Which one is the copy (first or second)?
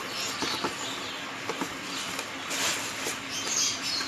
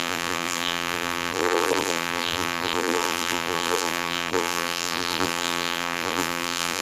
second